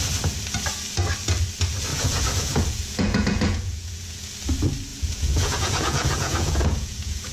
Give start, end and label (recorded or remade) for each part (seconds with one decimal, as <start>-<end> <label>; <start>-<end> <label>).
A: 0.0-1.9 recorded; 1.9-4.3 remade; 4.3-4.9 recorded; 4.9-7.3 remade